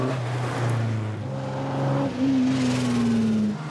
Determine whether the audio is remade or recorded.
recorded